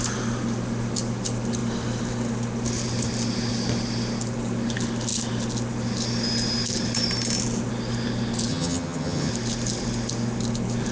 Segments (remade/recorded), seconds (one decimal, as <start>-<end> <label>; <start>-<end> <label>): 0.0-8.5 recorded; 8.5-9.3 remade; 9.3-10.9 recorded